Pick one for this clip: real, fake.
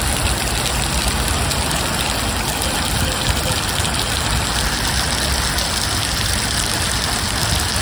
real